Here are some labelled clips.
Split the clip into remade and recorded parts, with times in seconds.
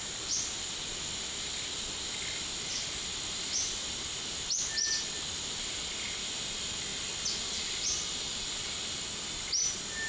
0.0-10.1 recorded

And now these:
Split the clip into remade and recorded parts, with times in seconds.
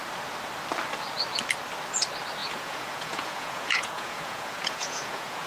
0.0-2.4 recorded; 2.4-5.5 remade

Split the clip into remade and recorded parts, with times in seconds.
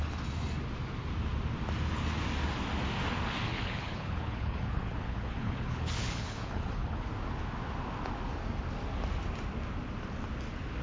0.0-3.5 recorded; 3.5-7.1 remade; 7.1-10.8 recorded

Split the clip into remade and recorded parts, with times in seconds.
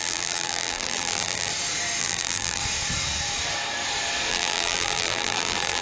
0.0-1.5 remade; 1.5-2.0 recorded; 2.0-2.6 remade; 2.6-4.3 recorded; 4.3-5.8 remade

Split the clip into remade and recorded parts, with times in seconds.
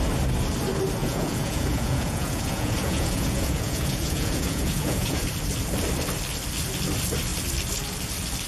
0.0-1.0 recorded; 1.0-5.3 remade; 5.3-8.5 recorded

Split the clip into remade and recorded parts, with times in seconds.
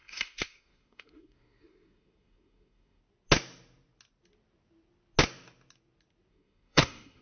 0.0-3.0 remade; 3.0-6.3 recorded; 6.3-7.2 remade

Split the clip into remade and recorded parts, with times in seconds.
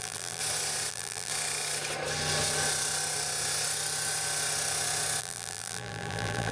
0.0-0.4 remade; 0.4-0.9 recorded; 0.9-1.3 remade; 1.3-5.2 recorded; 5.2-6.5 remade